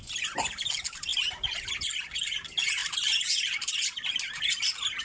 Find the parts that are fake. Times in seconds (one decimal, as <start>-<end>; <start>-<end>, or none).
2.8-3.7